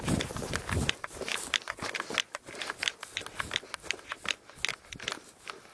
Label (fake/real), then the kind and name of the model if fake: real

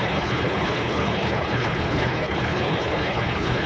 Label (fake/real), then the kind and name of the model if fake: fake, codec, HILCodec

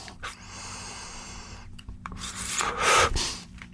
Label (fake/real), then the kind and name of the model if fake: fake, vocoder, BigVGAN v2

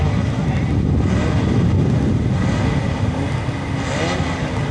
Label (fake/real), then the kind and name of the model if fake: real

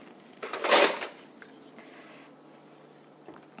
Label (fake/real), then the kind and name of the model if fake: real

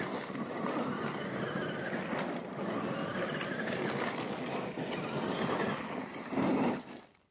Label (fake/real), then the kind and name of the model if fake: real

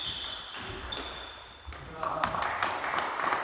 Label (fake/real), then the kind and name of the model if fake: fake, vocoder, BigVGAN v2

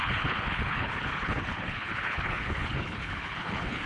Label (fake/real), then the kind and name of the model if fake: fake, codec, HILCodec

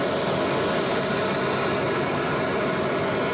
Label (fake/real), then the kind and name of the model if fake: real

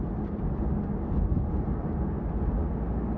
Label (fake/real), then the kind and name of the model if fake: real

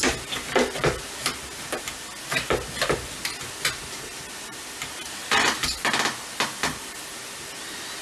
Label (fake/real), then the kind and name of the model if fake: real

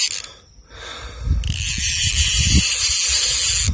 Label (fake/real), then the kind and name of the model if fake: real